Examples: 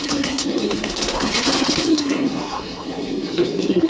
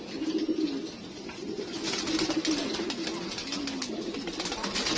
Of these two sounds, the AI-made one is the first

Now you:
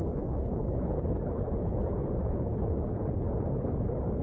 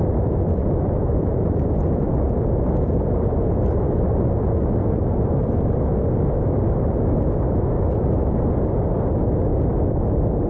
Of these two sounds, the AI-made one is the first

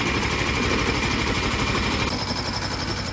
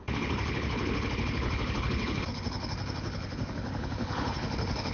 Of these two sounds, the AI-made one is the second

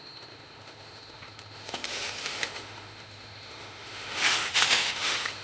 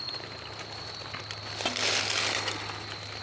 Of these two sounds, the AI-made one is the first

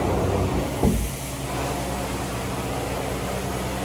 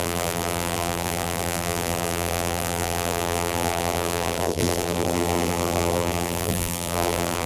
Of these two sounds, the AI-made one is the second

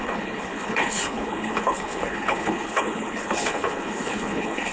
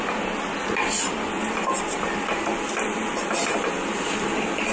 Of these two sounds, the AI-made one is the first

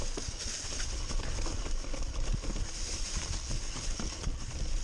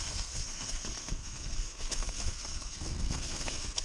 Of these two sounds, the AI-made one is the second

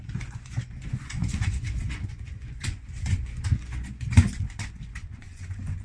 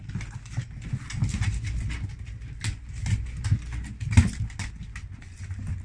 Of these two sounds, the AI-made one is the first